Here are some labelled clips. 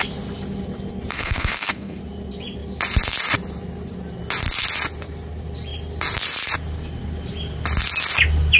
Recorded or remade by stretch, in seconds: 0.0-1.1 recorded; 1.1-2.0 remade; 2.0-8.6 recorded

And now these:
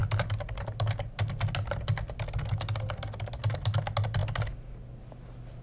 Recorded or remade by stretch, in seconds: 0.0-5.6 recorded